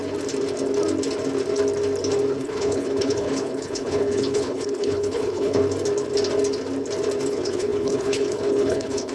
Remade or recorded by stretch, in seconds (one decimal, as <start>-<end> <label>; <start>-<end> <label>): 0.0-2.4 recorded; 2.4-5.6 remade; 5.6-7.3 recorded; 7.3-9.1 remade